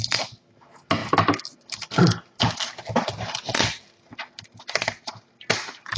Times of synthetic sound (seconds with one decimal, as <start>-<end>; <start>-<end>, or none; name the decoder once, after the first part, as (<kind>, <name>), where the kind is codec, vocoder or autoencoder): none